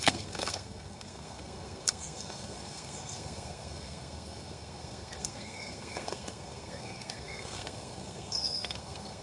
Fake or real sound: fake